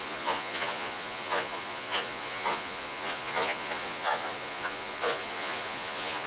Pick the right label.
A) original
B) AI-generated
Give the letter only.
B